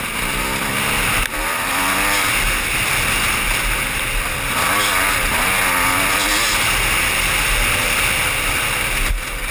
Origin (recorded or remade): recorded